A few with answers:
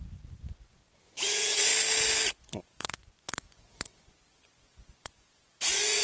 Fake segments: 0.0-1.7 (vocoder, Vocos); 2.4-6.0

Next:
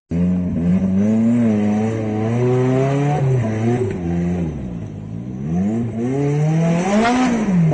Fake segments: none

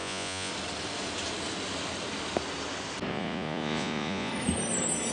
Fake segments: 0.0-0.5 (vocoder, Vocos); 3.1-4.3

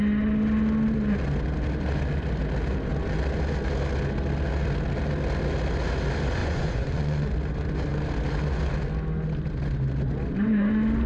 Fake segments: 6.4-7.3 (vocoder, Vocos)

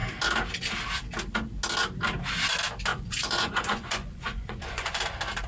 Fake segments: 2.9-5.0 (vocoder, Vocos)

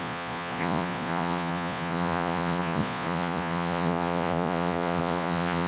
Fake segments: 0.0-5.7 (vocoder, Vocos)

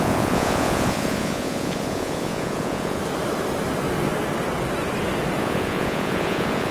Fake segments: 0.0-3.0 (vocoder, Vocos); 5.4-6.7

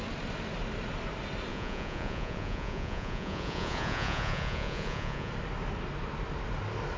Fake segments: 1.5-5.3 (vocoder, Vocos)